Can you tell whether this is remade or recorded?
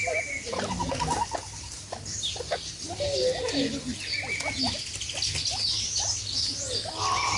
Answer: recorded